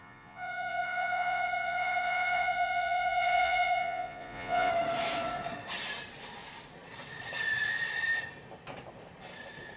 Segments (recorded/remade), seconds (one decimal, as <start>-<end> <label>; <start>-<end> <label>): 0.0-4.7 remade; 4.7-9.8 recorded